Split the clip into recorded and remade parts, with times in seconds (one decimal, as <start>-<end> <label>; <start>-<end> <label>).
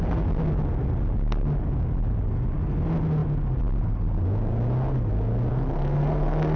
0.0-5.5 recorded; 5.5-6.6 remade